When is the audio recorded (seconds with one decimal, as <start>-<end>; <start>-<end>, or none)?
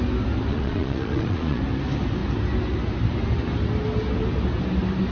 0.0-0.5; 1.6-5.1